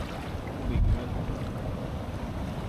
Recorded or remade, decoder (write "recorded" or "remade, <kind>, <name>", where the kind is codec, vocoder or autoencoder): recorded